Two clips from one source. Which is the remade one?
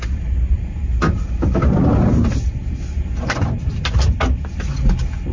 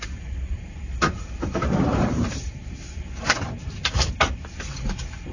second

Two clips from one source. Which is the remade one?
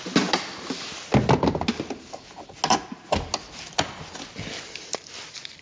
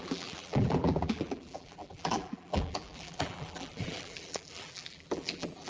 second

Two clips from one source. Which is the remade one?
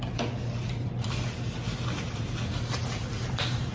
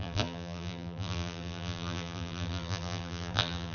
second